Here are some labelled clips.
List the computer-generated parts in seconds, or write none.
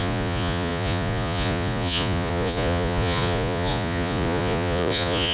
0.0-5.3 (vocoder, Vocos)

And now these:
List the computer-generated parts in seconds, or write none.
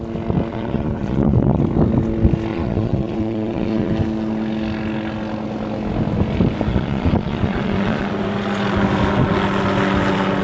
0.5-1.6 (vocoder, Vocos); 2.5-3.9; 6.7-8.1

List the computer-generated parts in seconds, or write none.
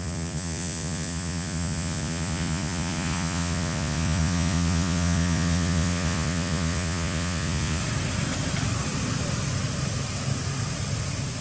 0.0-7.8 (vocoder, Vocos)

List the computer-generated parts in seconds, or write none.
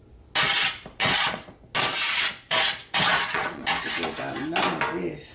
1.0-1.6 (vocoder, Vocos); 2.0-3.7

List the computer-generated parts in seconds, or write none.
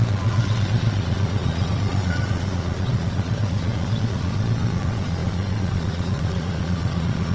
0.0-7.3 (vocoder, Vocos)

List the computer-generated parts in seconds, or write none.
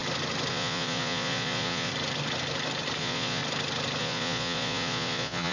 0.5-1.9 (vocoder, Vocos); 3.0-3.4; 4.0-5.5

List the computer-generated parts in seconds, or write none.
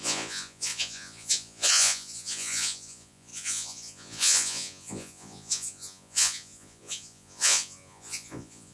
0.0-8.7 (vocoder, Vocos)